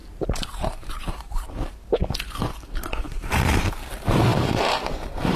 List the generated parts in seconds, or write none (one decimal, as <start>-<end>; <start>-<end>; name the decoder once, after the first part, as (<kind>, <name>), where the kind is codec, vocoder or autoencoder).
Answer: 0.0-2.0 (vocoder, BigVGAN v2); 3.0-5.4